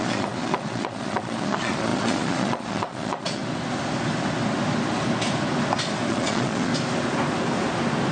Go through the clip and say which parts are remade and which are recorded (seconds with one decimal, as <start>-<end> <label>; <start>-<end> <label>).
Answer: 0.0-3.4 remade; 3.4-6.1 recorded; 6.1-6.7 remade; 6.7-8.1 recorded